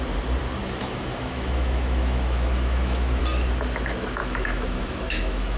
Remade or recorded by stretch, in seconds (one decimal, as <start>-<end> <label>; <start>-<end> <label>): 0.0-0.6 recorded; 0.6-3.2 remade; 3.2-4.2 recorded; 4.2-5.6 remade